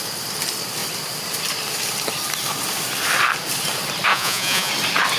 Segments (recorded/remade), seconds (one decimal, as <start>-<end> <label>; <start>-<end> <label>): 0.0-4.1 recorded; 4.1-4.7 remade; 4.7-5.2 recorded